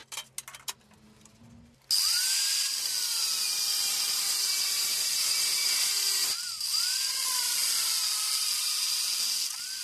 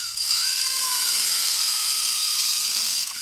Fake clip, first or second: second